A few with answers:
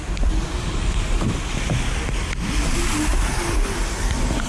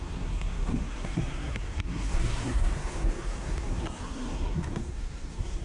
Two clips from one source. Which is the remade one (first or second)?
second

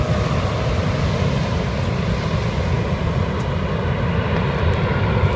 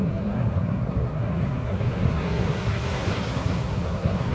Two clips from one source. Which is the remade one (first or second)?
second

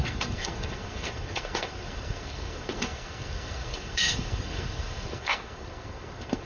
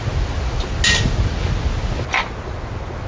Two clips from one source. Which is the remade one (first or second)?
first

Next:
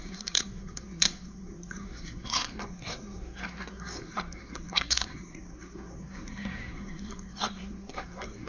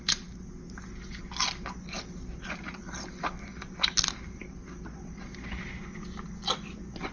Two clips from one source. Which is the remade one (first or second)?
first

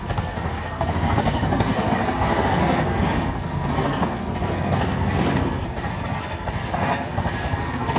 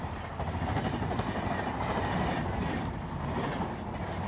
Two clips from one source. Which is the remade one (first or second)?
first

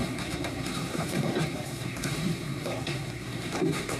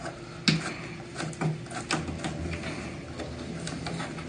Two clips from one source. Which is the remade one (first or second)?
first